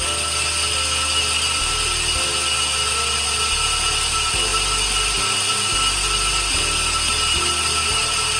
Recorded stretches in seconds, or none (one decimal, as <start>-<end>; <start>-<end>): 0.0-8.4